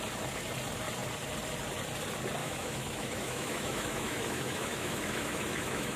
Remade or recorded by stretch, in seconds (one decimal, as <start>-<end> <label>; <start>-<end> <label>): 0.0-2.4 recorded; 2.4-6.0 remade